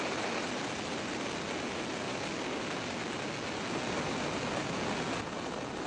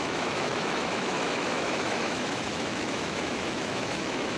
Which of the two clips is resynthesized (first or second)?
second